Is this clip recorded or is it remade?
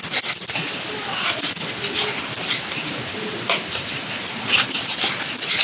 recorded